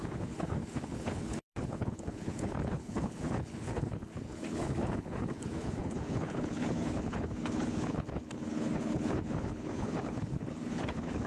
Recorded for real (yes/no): no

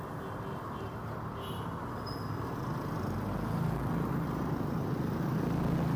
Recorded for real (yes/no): yes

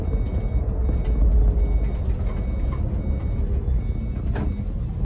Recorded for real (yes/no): yes